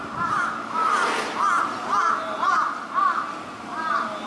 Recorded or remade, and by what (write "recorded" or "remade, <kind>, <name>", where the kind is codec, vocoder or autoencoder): recorded